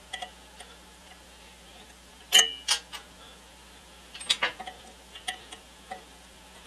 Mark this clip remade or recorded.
recorded